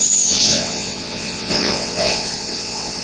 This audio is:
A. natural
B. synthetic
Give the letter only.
B